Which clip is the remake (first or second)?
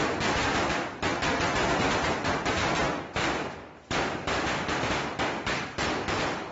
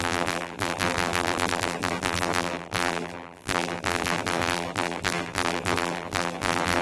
second